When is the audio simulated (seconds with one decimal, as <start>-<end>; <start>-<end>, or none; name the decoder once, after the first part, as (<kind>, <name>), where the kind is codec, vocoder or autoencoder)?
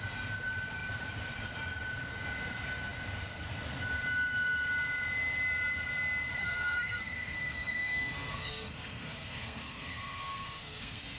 6.4-11.2 (codec, SNAC)